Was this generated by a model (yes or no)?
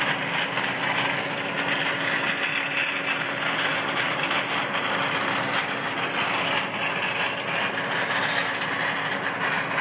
no